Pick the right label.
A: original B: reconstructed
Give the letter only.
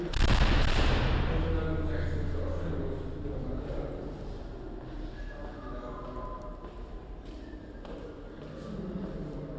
A